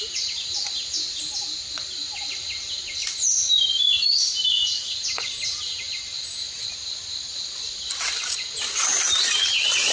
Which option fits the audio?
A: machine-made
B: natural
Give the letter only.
B